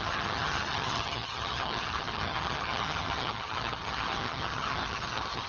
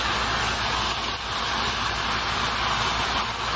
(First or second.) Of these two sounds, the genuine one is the second